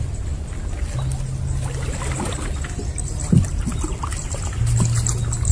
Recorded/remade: recorded